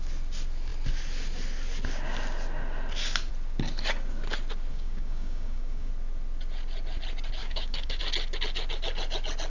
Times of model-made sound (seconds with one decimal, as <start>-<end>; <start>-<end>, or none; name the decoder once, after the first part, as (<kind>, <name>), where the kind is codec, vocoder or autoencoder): 4.7-5.9 (codec, DAC); 7.4-8.0